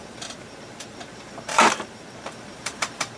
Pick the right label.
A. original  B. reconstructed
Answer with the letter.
B